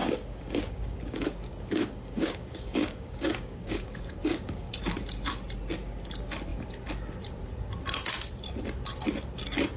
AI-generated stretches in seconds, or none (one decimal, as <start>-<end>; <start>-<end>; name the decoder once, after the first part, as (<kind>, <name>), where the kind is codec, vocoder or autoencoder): 0.0-4.8 (codec, DAC)